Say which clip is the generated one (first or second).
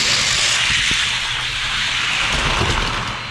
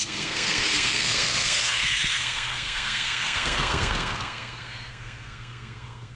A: second